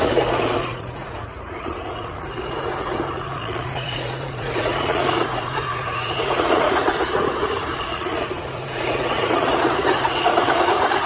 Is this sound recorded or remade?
remade